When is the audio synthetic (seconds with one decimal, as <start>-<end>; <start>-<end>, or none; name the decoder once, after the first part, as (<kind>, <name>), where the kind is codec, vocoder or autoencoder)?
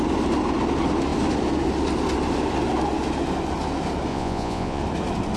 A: 4.1-4.8 (vocoder, Vocos)